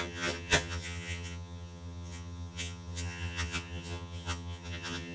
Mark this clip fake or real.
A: fake